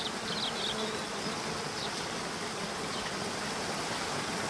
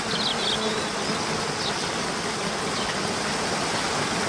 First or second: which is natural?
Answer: second